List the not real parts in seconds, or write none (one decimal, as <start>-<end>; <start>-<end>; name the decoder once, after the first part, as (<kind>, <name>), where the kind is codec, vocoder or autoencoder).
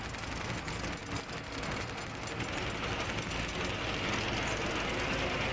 none